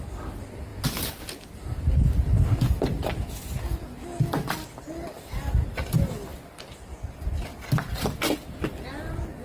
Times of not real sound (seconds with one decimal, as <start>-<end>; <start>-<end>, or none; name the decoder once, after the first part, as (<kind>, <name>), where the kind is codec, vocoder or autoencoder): none